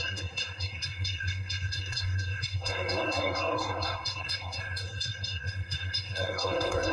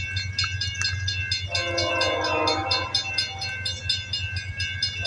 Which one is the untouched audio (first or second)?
second